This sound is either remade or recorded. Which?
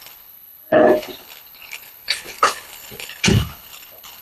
remade